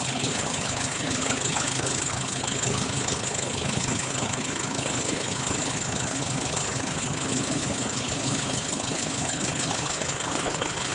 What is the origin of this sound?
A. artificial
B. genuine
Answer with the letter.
A